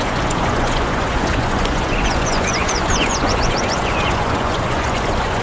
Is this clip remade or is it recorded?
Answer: remade